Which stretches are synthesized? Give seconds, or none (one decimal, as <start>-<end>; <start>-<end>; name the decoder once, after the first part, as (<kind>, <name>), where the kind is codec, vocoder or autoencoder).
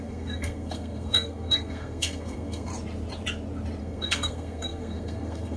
0.0-2.7 (codec, SNAC); 3.8-5.6